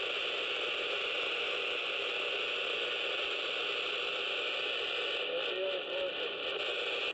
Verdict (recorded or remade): recorded